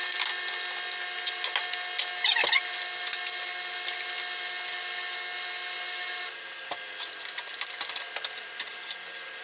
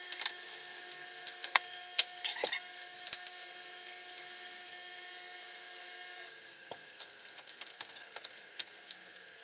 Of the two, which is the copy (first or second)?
second